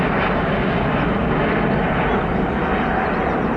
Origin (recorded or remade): recorded